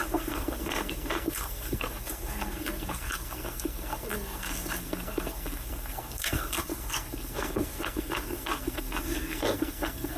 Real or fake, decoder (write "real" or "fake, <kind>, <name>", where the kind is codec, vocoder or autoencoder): fake, codec, SNAC